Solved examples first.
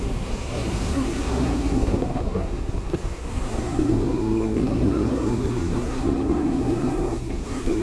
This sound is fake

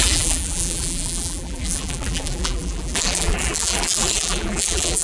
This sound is fake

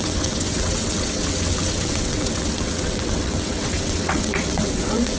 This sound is fake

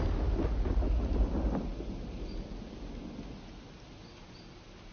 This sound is real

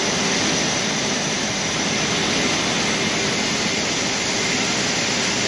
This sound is real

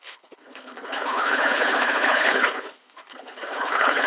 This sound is fake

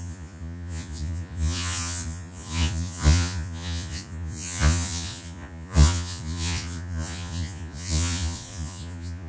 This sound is fake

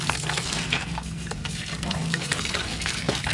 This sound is fake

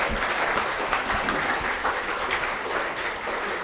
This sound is real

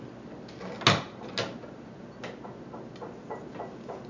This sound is real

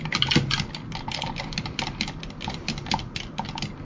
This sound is real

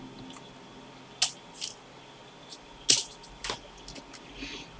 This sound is real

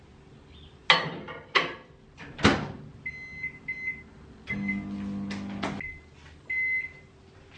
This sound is real